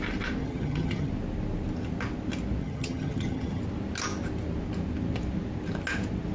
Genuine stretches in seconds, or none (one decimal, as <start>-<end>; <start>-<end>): 0.0-0.4; 1.1-2.6; 3.6-6.3